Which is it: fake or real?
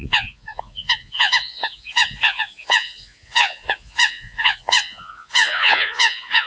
fake